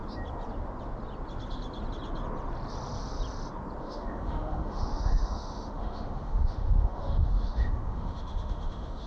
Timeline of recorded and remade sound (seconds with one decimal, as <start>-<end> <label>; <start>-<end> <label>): 0.0-3.8 recorded; 3.8-9.1 remade